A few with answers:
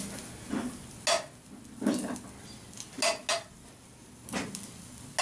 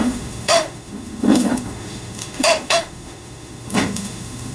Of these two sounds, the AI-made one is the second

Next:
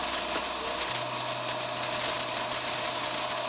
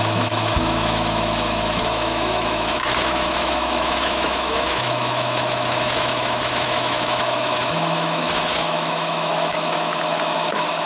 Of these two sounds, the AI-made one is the second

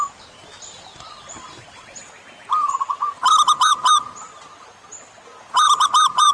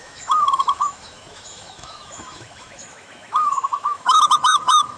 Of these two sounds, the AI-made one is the second